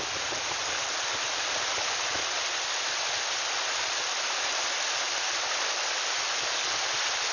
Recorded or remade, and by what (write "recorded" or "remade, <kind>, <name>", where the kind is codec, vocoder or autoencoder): recorded